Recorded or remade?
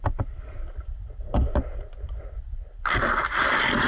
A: recorded